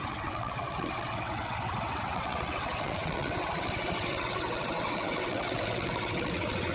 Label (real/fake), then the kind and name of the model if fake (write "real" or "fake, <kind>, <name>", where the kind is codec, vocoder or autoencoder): fake, vocoder, WaveNeXt